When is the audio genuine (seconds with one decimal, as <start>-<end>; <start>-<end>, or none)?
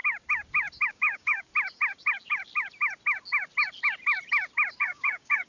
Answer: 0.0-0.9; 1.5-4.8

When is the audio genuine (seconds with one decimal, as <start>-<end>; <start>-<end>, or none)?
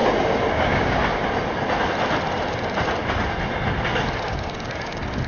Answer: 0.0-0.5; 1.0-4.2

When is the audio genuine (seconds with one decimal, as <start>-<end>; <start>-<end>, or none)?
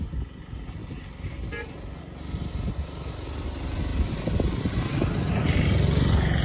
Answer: 0.0-6.4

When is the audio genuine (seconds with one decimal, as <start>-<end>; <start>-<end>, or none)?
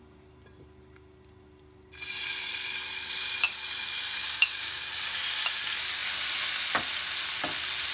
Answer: 0.0-4.2; 4.9-7.9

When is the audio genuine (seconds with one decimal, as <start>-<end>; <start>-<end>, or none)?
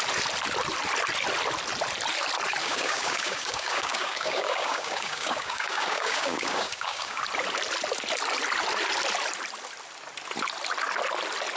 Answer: 0.0-2.6; 7.2-11.6